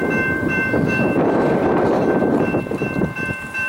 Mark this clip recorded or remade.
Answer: remade